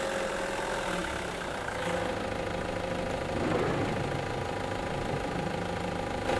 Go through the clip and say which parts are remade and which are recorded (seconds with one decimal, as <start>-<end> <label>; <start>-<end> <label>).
0.0-1.0 remade; 1.0-2.6 recorded; 2.6-6.4 remade